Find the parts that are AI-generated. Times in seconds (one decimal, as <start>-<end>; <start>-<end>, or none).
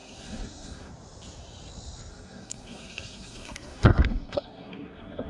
0.0-0.9; 2.1-5.3